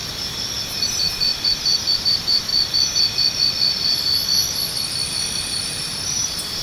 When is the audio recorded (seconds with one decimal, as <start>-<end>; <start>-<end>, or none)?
0.0-0.6; 2.5-5.4